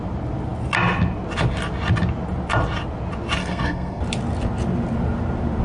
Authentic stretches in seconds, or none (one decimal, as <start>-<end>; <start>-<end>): 0.0-3.4; 4.0-5.6